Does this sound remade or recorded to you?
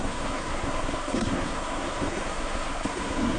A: remade